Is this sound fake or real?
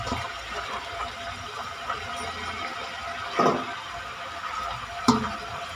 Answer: real